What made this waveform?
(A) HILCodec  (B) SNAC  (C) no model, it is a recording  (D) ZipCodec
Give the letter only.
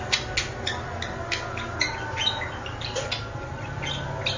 C